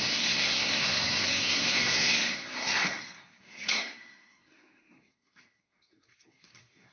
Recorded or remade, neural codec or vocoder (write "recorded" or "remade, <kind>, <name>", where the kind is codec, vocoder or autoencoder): remade, codec, SNAC